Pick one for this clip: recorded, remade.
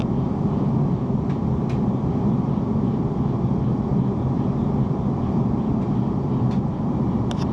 recorded